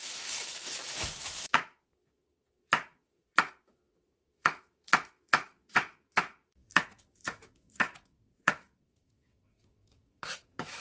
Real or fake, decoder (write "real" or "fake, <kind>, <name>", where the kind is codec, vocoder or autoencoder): fake, autoencoder, DAC-VAE